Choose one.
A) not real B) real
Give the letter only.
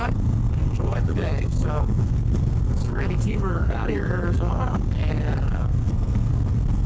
A